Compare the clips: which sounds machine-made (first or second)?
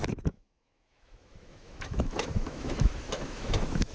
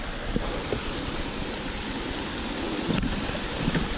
first